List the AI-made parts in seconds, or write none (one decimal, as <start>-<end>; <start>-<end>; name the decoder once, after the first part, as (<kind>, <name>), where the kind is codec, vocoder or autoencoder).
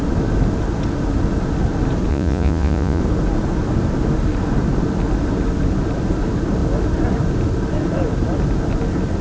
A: 2.1-3.0 (vocoder, Vocos)